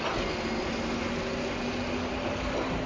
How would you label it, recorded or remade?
recorded